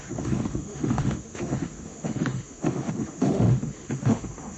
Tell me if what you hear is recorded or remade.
remade